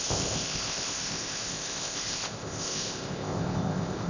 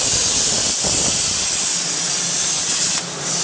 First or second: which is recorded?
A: second